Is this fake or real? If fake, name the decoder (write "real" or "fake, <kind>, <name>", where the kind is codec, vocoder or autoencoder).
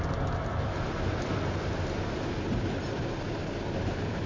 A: real